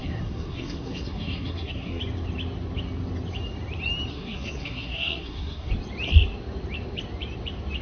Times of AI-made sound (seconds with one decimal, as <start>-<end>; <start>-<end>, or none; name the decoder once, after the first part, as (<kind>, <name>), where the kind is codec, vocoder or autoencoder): 0.0-2.0 (codec, SNAC); 4.1-5.7